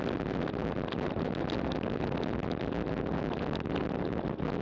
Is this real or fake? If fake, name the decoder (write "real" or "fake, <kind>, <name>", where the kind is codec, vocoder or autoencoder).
real